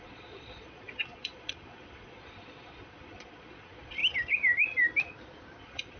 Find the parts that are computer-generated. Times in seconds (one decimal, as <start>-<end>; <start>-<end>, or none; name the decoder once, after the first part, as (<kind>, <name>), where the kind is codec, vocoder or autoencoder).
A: 0.0-4.0 (vocoder, Vocos); 5.6-6.0